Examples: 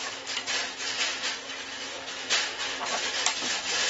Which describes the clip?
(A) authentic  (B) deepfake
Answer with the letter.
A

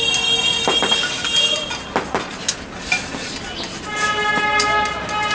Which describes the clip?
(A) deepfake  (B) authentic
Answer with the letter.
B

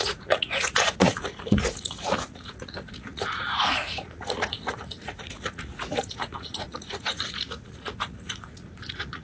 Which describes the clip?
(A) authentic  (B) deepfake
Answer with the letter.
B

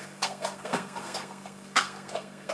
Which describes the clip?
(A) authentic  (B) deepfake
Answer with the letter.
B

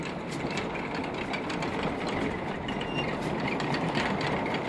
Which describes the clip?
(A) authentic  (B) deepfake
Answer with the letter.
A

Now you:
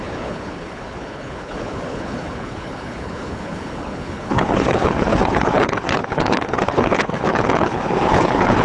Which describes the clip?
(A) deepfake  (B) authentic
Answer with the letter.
A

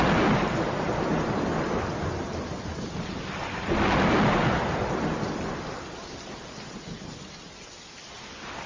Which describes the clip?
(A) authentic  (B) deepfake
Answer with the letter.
A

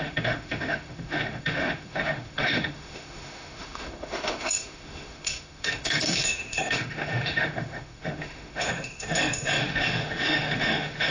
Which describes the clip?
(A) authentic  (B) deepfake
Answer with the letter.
B